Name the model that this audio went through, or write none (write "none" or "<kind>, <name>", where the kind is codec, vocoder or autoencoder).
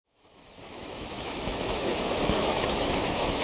autoencoder, DAC-VAE